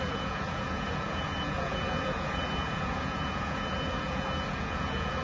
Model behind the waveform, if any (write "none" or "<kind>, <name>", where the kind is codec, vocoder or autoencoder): vocoder, Vocos